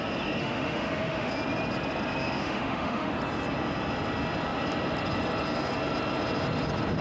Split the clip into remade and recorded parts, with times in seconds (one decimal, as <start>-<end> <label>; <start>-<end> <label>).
0.0-0.4 recorded; 0.4-1.3 remade; 1.3-2.4 recorded; 2.4-3.1 remade; 3.1-7.0 recorded